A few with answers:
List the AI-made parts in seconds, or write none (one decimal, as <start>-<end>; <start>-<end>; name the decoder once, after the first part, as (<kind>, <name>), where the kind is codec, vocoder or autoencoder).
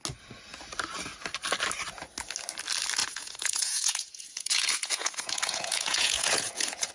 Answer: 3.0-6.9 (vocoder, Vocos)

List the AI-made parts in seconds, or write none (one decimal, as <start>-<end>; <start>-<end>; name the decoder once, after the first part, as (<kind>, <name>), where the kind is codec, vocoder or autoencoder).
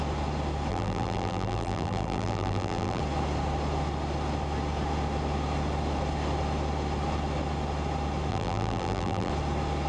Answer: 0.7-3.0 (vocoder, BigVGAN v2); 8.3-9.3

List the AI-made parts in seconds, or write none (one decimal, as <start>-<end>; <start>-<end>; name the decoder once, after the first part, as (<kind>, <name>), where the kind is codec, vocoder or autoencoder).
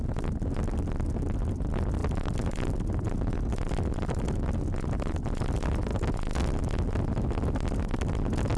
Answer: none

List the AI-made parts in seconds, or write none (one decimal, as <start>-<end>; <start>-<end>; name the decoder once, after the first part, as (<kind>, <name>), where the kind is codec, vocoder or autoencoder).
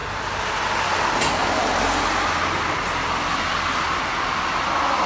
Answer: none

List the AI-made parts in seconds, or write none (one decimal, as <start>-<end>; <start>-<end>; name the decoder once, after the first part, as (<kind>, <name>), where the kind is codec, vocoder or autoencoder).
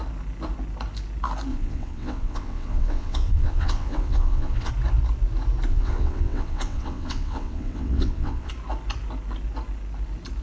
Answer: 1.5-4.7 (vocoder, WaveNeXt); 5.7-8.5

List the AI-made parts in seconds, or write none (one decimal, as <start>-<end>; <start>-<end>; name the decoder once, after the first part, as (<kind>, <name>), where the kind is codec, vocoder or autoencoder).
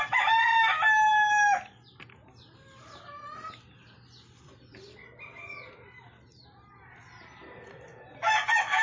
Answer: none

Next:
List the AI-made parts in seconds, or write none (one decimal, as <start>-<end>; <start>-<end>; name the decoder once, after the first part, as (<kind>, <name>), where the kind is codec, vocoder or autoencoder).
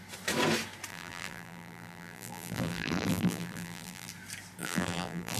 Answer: 0.9-4.1 (vocoder, BigVGAN v2); 4.6-5.4